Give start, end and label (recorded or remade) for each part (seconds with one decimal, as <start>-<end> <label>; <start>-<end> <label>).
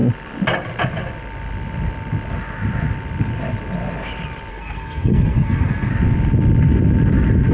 0.0-4.5 recorded; 4.5-5.9 remade; 5.9-7.5 recorded